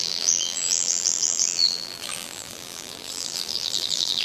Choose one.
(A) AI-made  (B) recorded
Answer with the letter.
A